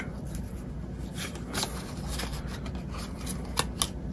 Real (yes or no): yes